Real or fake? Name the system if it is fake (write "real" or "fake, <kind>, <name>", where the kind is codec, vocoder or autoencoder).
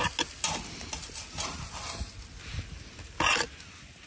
real